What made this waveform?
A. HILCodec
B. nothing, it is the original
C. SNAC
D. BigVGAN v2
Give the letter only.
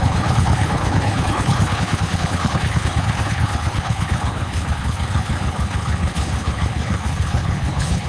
A